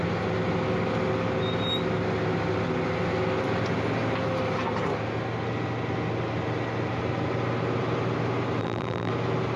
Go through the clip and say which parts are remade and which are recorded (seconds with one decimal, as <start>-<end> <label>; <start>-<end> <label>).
0.0-8.6 recorded; 8.6-9.1 remade; 9.1-9.6 recorded